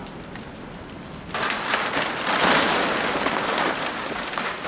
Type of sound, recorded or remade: recorded